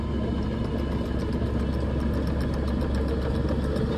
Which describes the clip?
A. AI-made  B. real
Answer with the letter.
B